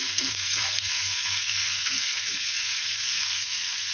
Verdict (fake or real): fake